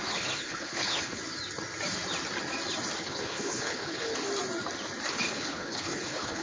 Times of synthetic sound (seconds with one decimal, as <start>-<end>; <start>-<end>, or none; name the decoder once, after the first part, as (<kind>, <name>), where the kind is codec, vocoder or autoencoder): 0.0-1.2 (codec, HILCodec); 3.0-4.3; 5.1-6.4